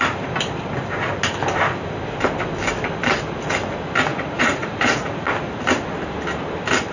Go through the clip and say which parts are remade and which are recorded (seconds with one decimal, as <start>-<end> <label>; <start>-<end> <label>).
0.0-4.1 recorded; 4.1-5.3 remade; 5.3-6.9 recorded